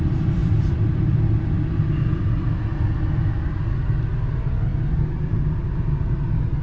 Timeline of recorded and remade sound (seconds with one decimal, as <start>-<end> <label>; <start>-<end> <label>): 0.0-6.6 recorded

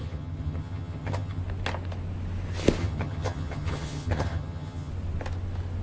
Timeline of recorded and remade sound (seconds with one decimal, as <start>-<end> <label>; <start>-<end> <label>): 0.0-1.4 remade; 1.4-2.8 recorded; 2.8-4.9 remade; 4.9-5.8 recorded

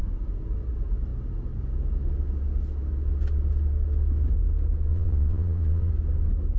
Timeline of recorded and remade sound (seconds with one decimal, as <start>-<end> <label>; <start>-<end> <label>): 0.0-4.9 recorded; 4.9-5.9 remade; 5.9-6.6 recorded